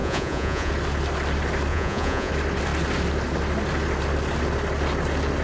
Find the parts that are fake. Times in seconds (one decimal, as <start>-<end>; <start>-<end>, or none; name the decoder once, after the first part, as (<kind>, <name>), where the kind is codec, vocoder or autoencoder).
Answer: 0.0-0.7 (vocoder, Vocos); 1.7-2.3